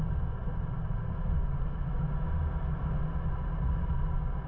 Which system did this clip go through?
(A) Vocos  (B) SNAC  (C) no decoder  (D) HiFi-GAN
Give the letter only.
C